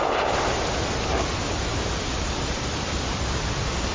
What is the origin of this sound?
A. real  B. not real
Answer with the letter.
A